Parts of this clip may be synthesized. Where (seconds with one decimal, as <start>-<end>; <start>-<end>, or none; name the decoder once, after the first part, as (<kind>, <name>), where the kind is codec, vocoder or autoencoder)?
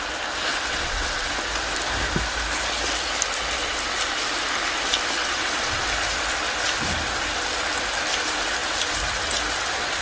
0.5-1.3 (vocoder, WaveNeXt); 5.2-5.8